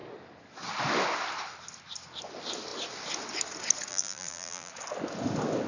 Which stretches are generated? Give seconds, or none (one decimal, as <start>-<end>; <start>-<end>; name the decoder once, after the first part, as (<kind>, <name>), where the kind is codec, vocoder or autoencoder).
3.9-4.7 (vocoder, BigVGAN v2)